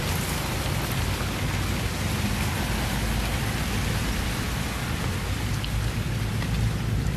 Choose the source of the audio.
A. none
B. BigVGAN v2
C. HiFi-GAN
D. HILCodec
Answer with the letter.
A